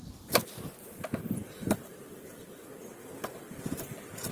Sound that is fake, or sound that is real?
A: fake